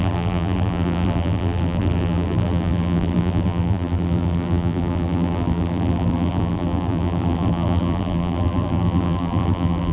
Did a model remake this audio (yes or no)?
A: yes